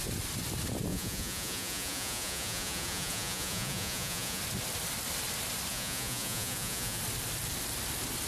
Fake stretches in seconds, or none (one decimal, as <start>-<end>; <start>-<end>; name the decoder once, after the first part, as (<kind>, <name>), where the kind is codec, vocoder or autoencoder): 0.9-4.4 (vocoder, Vocos); 5.7-7.0

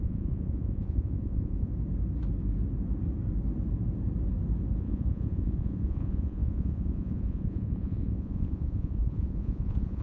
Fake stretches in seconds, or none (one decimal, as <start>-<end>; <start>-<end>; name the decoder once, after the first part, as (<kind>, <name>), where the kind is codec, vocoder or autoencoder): 0.0-1.7 (vocoder, Vocos); 4.7-10.0